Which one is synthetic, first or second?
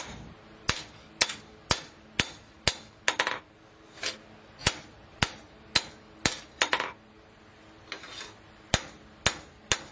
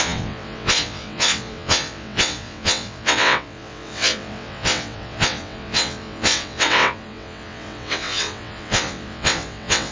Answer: second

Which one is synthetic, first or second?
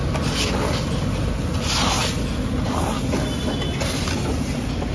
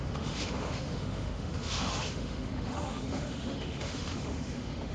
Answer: second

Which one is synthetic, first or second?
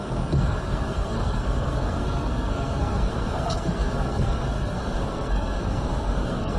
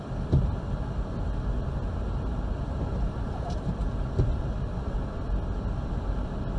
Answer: first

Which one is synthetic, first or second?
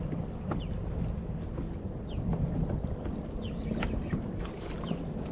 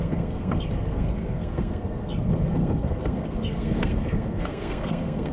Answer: second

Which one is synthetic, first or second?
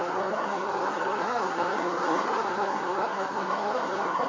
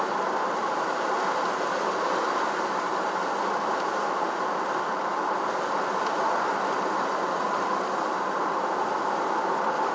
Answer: first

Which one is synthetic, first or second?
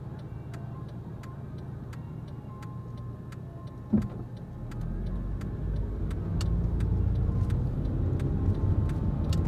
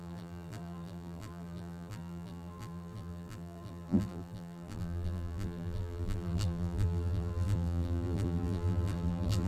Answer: second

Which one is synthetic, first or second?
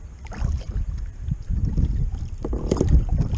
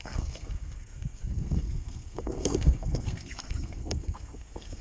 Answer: second